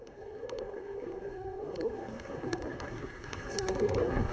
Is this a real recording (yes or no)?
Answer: no